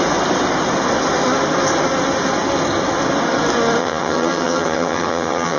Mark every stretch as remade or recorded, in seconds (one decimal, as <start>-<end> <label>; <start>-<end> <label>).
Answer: 0.0-3.8 recorded; 3.8-5.6 remade